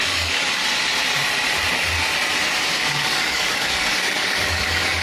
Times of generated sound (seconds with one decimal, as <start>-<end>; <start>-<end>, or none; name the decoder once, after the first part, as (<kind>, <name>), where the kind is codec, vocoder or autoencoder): 0.0-0.6 (codec, DAC); 2.9-5.0